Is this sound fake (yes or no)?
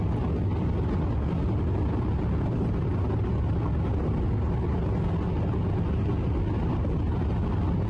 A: no